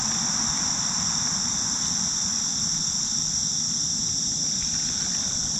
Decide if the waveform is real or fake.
real